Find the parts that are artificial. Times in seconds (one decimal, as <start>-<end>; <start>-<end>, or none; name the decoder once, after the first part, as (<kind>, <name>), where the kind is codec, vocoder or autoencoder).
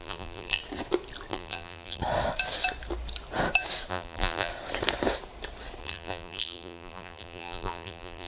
0.0-0.6 (vocoder, BigVGAN v2); 1.3-2.0; 3.9-4.5; 5.8-8.3